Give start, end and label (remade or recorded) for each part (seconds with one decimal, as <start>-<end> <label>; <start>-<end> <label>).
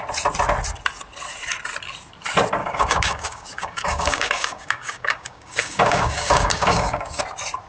0.0-2.6 recorded; 2.6-7.2 remade; 7.2-7.7 recorded